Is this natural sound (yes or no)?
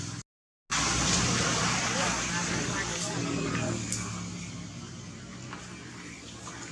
yes